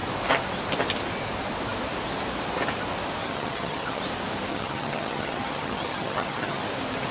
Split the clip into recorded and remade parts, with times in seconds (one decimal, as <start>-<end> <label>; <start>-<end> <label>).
0.0-3.2 recorded; 3.2-4.0 remade; 4.0-4.5 recorded; 4.5-6.6 remade; 6.6-7.1 recorded